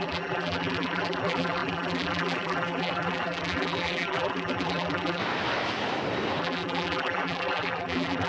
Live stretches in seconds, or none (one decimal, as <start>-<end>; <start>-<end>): 5.2-6.4